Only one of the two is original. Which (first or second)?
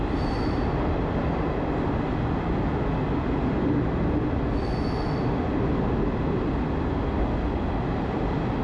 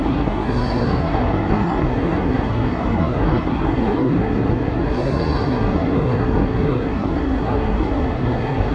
first